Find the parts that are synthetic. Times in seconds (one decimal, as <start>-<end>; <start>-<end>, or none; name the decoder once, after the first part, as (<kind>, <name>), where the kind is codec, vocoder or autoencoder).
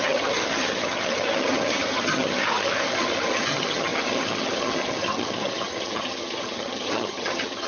0.0-7.7 (vocoder, HiFi-GAN)